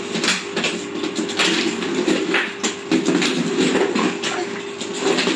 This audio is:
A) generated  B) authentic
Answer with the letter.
B